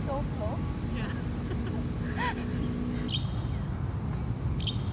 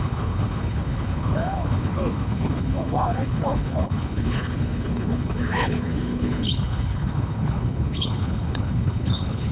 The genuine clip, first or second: first